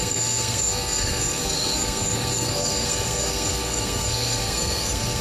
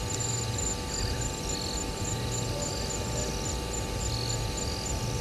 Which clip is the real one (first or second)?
second